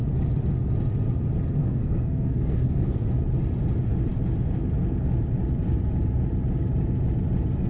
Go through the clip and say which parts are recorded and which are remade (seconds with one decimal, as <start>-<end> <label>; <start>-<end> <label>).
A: 0.0-1.6 recorded; 1.6-3.1 remade; 3.1-7.7 recorded